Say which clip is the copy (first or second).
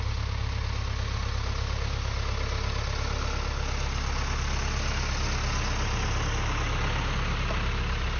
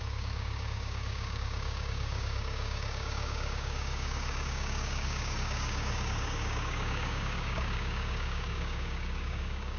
second